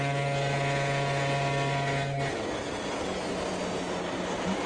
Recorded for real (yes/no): yes